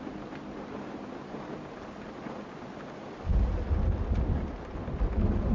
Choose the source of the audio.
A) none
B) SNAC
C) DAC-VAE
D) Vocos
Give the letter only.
A